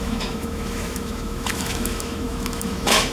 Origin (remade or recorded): remade